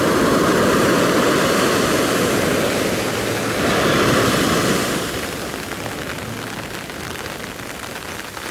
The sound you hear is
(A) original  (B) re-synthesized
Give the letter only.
A